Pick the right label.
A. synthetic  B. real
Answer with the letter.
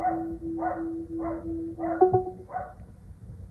B